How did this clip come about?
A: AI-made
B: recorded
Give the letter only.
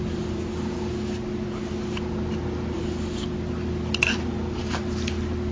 B